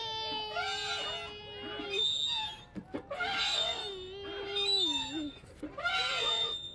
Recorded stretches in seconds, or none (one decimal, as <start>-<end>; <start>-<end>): 0.0-3.4; 3.8-6.1